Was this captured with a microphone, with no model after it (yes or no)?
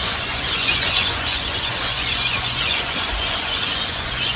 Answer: no